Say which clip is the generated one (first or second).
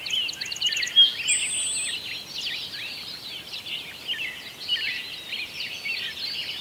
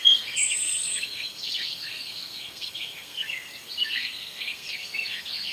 second